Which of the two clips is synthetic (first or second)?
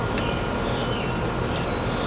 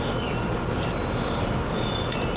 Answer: second